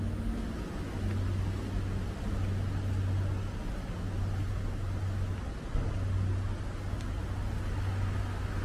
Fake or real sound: real